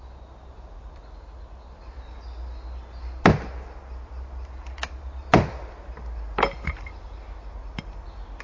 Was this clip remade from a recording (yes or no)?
no